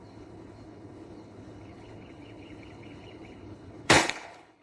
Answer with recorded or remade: remade